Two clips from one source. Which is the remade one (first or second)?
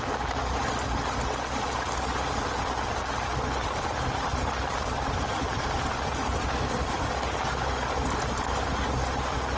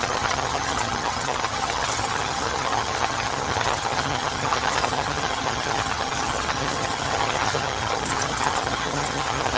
second